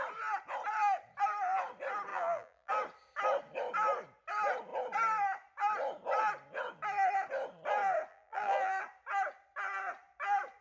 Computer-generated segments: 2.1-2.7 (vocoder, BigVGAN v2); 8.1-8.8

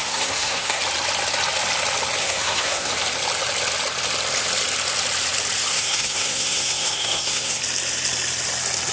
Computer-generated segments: 0.0-0.8 (codec, SNAC); 2.2-2.9; 5.7-7.6

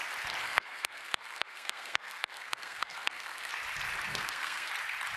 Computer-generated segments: 0.4-3.5 (codec, SNAC); 4.1-4.7